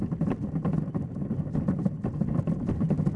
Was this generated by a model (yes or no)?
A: no